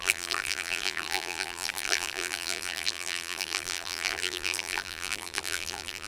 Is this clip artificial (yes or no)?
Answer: yes